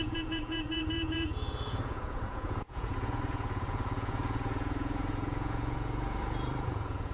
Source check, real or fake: fake